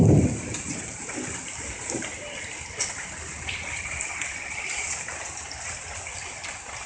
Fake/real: real